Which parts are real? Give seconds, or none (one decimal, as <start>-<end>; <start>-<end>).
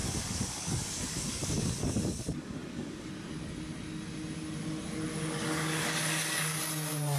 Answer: 3.1-5.1; 6.6-7.2